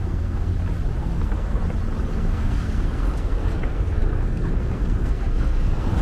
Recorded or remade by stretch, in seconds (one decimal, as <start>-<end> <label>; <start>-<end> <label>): 0.0-0.5 remade; 0.5-1.0 recorded; 1.0-1.6 remade; 1.6-2.1 recorded; 2.1-6.0 remade